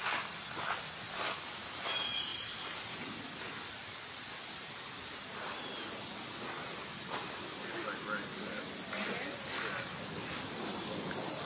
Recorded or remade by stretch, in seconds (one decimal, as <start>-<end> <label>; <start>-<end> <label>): 0.0-11.5 recorded